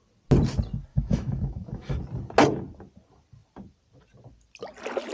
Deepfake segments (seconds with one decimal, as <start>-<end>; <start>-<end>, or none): 0.9-2.0